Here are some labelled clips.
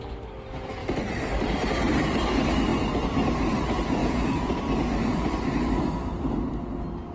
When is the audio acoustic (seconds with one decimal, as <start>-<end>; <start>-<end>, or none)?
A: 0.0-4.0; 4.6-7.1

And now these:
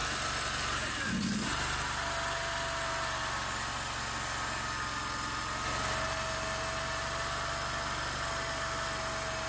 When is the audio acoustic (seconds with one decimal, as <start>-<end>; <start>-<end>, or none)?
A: 1.1-9.5

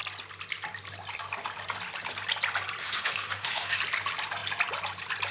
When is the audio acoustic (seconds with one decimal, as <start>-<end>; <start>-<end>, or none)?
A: 0.0-2.8; 3.8-5.3

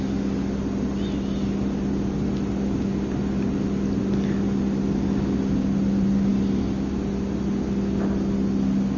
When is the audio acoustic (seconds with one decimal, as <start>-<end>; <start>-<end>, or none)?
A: 0.0-9.0